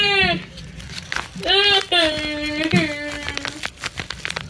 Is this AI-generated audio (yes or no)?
no